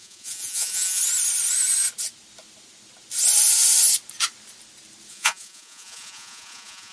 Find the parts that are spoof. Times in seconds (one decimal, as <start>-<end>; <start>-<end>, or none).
0.0-1.0; 5.1-6.9

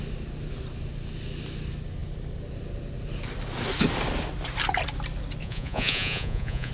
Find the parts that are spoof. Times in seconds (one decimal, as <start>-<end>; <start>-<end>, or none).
5.4-6.7

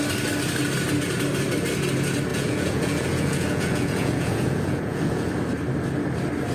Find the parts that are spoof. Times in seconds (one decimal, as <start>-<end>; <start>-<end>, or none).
2.3-5.3

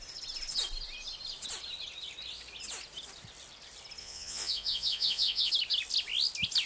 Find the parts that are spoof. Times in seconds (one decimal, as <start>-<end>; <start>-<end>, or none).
4.0-5.5

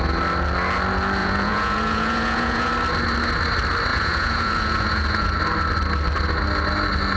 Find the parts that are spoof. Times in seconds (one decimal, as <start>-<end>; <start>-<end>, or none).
1.2-2.7; 3.9-5.4

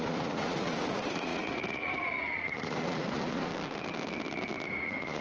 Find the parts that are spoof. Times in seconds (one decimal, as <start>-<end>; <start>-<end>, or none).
0.0-3.5; 4.8-5.2

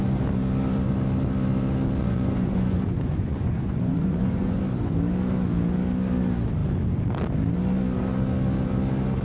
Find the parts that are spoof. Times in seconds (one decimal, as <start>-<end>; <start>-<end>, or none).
2.0-4.6

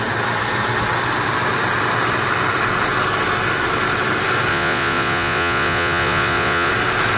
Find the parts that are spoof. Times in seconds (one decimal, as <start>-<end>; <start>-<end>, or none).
4.5-6.7